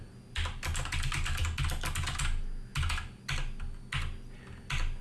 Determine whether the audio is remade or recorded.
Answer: recorded